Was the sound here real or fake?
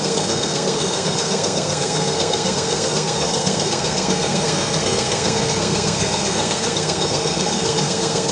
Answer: fake